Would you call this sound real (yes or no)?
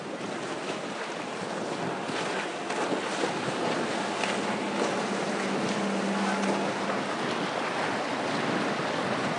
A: yes